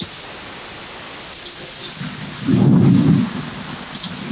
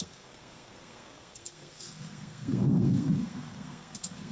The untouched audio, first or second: first